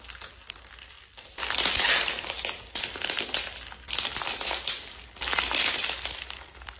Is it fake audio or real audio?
real